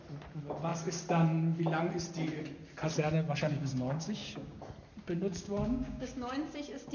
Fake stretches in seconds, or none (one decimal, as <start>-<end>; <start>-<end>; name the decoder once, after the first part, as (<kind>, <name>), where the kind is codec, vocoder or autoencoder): 3.5-4.6 (codec, DAC); 5.2-6.4